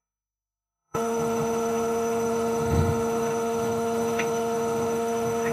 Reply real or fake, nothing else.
fake